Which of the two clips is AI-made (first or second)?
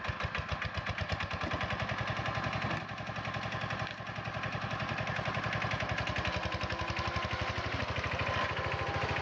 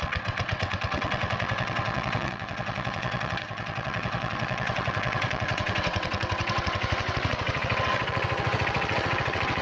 second